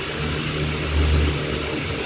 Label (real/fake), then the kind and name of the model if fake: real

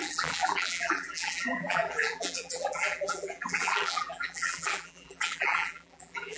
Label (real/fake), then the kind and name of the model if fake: fake, vocoder, BigVGAN v2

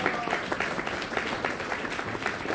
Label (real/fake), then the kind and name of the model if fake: real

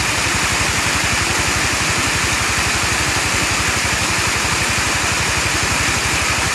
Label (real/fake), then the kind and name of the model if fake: real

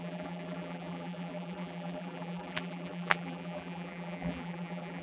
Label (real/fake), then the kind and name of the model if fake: fake, vocoder, BigVGAN v2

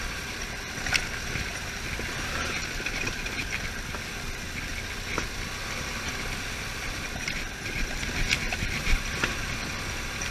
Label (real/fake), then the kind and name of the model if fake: real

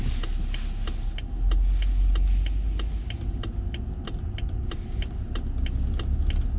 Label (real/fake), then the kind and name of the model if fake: real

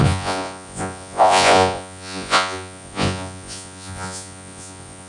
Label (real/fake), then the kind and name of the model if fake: fake, vocoder, Vocos